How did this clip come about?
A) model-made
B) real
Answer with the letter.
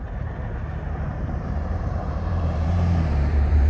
A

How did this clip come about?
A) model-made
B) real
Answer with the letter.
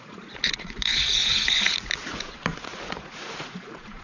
A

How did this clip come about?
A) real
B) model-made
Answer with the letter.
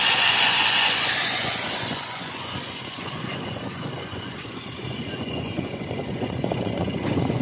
B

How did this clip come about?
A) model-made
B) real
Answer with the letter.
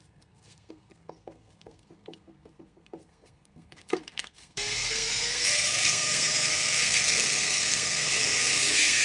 A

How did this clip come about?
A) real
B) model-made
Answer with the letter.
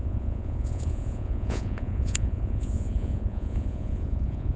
B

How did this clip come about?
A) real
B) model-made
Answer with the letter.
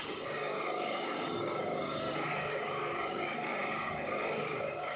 B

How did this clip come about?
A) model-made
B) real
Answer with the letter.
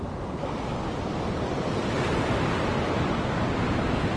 B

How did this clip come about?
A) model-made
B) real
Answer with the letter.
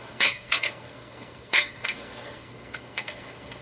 A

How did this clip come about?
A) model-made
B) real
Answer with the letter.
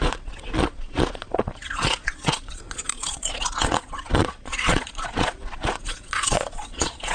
A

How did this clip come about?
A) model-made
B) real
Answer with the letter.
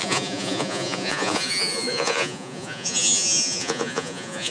A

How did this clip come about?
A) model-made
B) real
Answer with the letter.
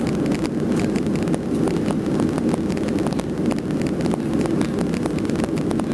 B